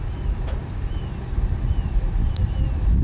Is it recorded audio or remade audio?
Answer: recorded